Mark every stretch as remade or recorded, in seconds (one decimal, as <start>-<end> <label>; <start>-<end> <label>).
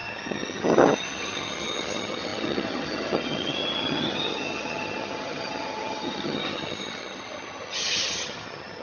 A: 0.0-8.8 remade